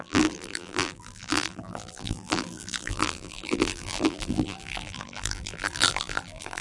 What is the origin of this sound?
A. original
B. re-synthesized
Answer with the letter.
B